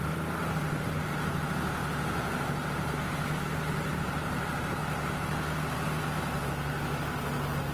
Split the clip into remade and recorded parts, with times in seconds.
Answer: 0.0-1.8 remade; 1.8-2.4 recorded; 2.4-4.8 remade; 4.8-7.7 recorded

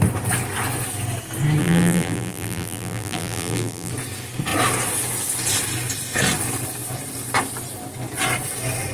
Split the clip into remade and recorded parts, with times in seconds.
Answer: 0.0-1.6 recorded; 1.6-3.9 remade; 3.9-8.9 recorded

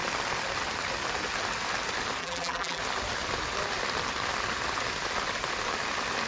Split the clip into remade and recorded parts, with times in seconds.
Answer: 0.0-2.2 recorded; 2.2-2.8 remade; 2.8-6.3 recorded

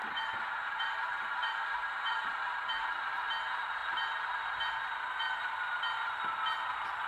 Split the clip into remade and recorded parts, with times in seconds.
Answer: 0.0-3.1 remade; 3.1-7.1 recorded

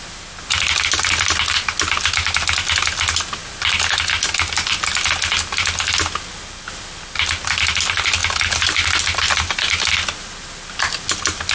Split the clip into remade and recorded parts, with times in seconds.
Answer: 0.0-11.5 recorded

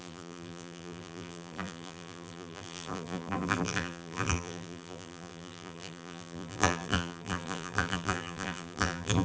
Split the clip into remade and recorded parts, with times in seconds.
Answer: 0.0-9.2 remade

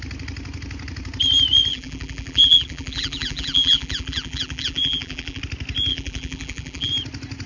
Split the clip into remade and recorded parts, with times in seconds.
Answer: 0.0-1.7 recorded; 1.7-5.4 remade; 5.4-5.9 recorded; 5.9-6.9 remade; 6.9-7.5 recorded

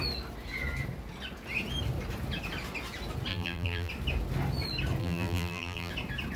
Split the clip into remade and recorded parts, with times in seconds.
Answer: 0.0-3.3 recorded; 3.3-3.9 remade; 3.9-5.0 recorded; 5.0-5.9 remade; 5.9-6.4 recorded